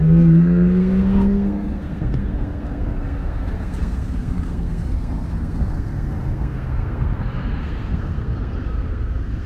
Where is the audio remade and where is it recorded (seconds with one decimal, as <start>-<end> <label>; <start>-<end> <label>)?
0.0-9.5 remade